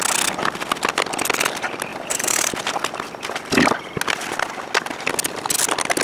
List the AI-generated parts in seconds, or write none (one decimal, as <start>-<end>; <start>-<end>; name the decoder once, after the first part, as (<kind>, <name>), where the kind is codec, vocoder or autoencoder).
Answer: 1.9-2.5 (vocoder, BigVGAN v2)

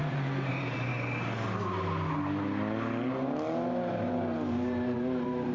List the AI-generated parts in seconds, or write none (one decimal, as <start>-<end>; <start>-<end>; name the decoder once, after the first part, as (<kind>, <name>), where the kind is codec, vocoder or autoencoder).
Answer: 0.0-0.9 (vocoder, BigVGAN v2); 3.9-5.5

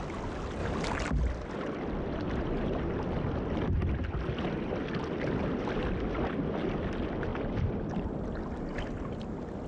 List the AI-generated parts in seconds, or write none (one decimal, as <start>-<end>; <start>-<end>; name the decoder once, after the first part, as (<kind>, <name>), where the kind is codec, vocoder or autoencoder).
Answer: 0.6-1.1 (vocoder, BigVGAN v2); 7.3-8.2

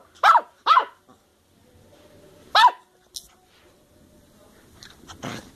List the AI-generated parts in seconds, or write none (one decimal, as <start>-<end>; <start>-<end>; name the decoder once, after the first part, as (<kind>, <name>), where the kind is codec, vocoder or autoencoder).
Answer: none

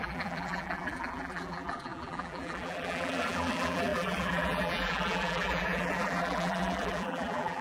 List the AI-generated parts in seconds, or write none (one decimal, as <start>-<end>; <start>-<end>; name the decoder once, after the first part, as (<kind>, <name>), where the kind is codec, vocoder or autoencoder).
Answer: 0.0-7.6 (vocoder, BigVGAN v2)

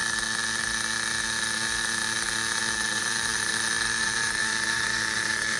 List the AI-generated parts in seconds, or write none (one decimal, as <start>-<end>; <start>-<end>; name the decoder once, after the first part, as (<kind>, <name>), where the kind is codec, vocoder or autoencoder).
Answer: 2.7-3.5 (vocoder, BigVGAN v2); 4.0-5.6

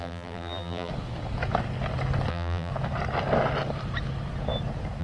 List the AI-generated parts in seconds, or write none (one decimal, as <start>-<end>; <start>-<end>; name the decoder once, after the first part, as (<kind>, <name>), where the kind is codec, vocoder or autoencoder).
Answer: 0.0-0.9 (vocoder, BigVGAN v2); 2.3-2.7

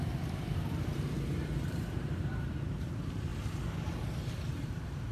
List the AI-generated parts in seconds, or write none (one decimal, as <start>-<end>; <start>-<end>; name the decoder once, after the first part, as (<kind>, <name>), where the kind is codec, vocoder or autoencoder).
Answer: 0.0-3.3 (vocoder, BigVGAN v2); 4.2-5.1